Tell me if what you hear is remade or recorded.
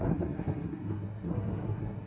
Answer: remade